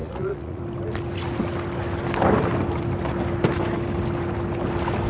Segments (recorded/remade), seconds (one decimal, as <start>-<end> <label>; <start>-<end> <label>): 0.0-0.6 remade; 0.6-5.1 recorded